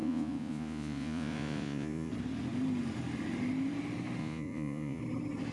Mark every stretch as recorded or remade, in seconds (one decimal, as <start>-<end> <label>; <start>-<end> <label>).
0.0-2.1 remade; 2.1-4.2 recorded; 4.2-5.0 remade; 5.0-5.5 recorded